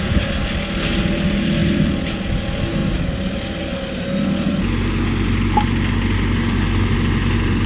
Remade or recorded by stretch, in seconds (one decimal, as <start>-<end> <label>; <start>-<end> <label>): 0.0-7.7 recorded